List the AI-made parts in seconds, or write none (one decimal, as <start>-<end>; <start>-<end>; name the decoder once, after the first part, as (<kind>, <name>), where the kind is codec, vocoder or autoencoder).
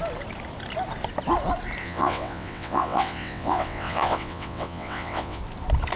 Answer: 1.8-5.4 (vocoder, WaveNeXt)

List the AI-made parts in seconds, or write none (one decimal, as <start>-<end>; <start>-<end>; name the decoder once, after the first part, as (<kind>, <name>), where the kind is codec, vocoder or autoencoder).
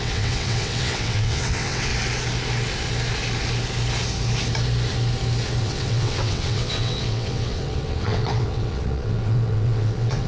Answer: 0.0-1.9 (vocoder, WaveNeXt); 5.6-10.3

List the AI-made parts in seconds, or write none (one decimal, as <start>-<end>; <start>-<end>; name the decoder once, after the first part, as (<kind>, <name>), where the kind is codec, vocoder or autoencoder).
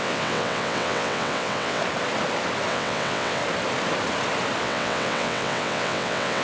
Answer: 0.0-1.8 (vocoder, WaveNeXt); 2.7-3.4; 4.6-6.4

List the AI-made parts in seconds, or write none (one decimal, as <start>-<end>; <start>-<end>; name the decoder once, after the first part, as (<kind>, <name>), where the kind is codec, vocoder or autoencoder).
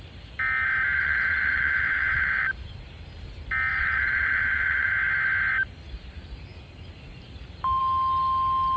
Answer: 1.0-2.5 (vocoder, WaveNeXt); 3.7-4.9